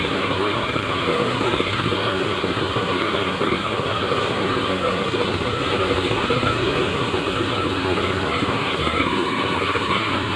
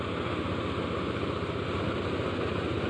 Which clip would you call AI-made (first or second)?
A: first